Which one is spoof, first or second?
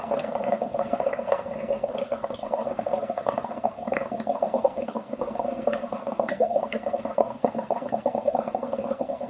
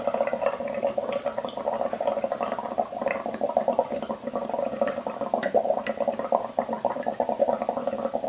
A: first